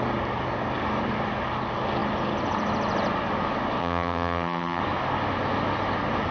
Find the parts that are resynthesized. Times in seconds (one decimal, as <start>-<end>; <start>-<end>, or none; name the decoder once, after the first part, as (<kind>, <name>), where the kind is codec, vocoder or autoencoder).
3.8-4.8 (vocoder, HiFi-GAN)